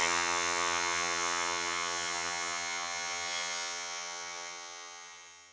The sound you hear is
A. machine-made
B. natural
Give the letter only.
A